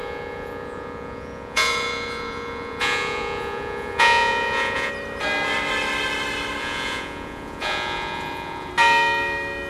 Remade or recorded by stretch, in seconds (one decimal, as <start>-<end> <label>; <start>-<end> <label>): 0.0-4.9 remade; 4.9-6.6 recorded; 6.6-8.7 remade; 8.7-9.7 recorded